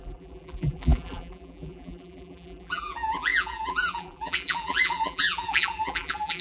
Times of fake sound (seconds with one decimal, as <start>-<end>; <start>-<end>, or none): 0.0-6.4